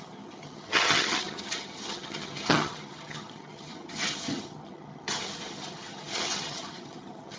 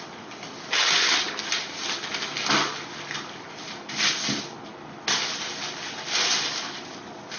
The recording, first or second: second